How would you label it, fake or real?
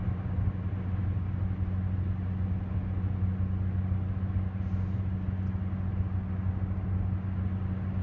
real